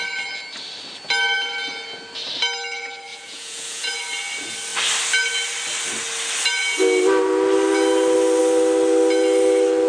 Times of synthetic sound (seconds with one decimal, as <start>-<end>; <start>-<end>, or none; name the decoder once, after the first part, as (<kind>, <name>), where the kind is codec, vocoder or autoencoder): 3.1-4.0 (vocoder, Vocos)